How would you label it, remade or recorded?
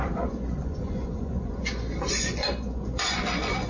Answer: remade